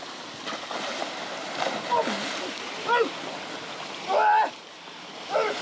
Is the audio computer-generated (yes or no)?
no